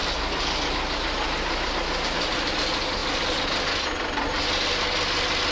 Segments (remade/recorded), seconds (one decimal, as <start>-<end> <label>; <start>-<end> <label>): 0.0-5.5 recorded